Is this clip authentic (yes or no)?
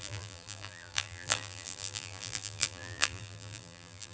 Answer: no